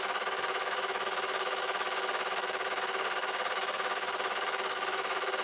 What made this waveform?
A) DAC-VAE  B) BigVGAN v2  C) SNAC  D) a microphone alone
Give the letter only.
A